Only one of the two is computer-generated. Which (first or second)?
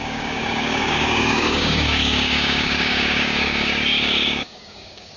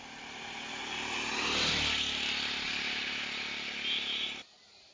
first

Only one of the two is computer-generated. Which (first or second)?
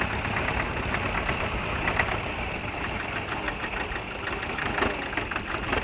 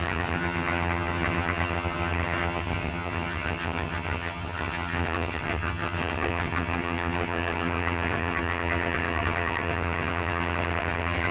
second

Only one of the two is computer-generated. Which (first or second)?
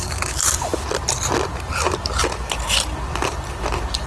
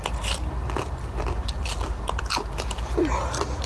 first